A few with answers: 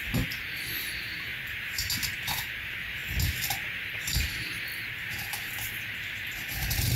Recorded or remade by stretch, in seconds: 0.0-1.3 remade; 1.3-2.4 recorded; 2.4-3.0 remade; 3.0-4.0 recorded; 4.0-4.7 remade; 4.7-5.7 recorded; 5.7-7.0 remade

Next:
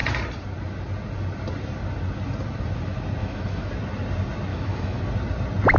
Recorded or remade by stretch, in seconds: 0.0-3.2 recorded; 3.2-3.7 remade; 3.7-4.5 recorded; 4.5-5.0 remade; 5.0-5.8 recorded